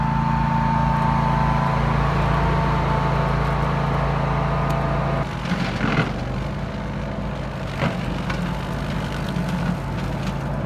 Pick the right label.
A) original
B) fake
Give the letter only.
A